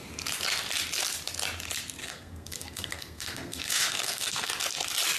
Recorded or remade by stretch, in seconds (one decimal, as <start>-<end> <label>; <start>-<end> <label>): 0.0-2.0 recorded; 2.0-4.5 remade; 4.5-5.2 recorded